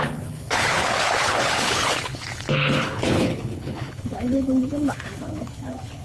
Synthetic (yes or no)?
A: yes